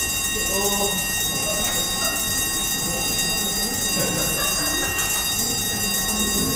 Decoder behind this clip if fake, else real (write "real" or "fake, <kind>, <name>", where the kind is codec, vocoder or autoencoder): real